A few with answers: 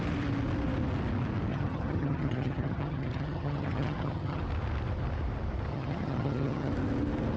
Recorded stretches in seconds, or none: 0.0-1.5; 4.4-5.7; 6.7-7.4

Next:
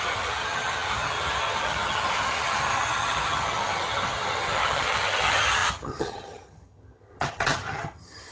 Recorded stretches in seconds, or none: none

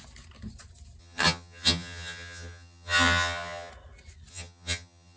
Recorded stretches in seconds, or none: 0.0-1.0; 3.7-4.3